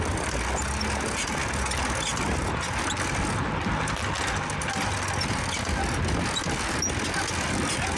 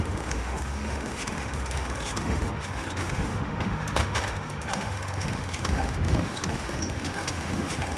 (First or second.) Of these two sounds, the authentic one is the first